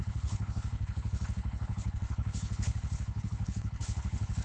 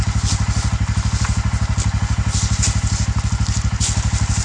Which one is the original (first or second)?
second